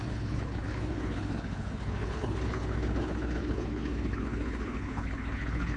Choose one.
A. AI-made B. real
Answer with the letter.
A